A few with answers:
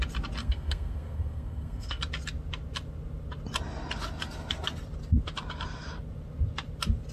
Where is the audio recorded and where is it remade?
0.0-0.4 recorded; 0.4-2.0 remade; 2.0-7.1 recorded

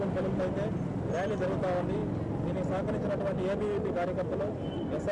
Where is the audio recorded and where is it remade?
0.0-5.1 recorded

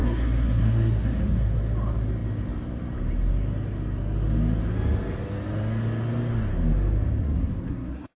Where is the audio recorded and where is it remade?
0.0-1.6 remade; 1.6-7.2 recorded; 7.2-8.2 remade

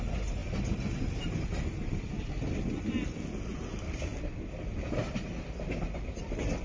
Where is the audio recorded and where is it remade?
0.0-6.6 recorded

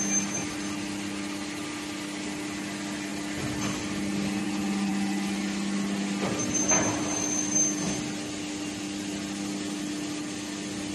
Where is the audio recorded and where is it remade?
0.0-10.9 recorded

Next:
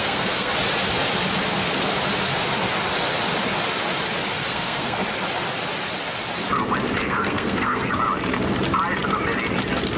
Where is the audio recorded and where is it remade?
0.0-0.5 remade; 0.5-4.5 recorded; 4.5-5.0 remade; 5.0-7.0 recorded; 7.0-7.9 remade; 7.9-10.0 recorded

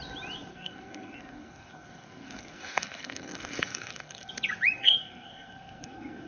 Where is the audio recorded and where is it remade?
0.0-0.5 recorded; 0.5-4.3 remade; 4.3-4.8 recorded; 4.8-6.3 remade